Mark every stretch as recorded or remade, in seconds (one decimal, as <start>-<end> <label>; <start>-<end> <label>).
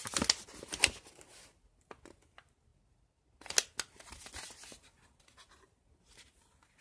0.0-6.8 recorded